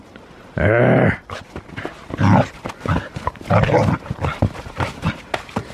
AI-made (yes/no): no